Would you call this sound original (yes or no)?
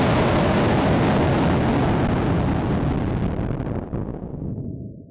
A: yes